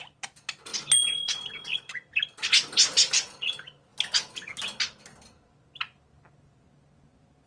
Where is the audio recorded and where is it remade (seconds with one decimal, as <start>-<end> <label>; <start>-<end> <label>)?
0.0-7.5 recorded